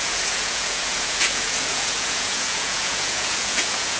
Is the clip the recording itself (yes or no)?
no